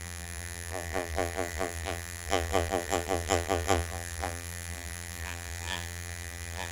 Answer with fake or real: fake